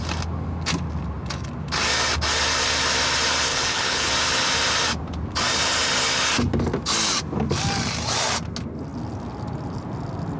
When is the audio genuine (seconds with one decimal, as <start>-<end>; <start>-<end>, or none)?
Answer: 0.0-3.5; 4.1-10.4